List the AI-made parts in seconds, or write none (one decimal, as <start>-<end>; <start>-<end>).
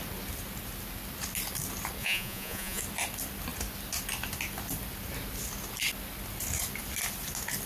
2.0-2.8